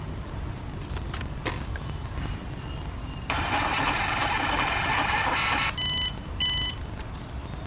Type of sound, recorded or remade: recorded